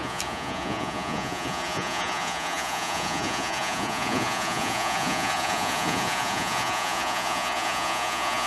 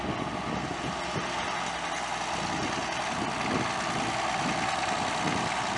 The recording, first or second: second